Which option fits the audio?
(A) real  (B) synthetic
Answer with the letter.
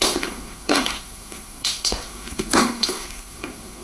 B